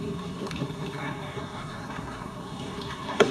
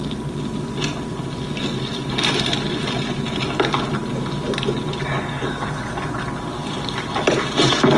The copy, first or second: first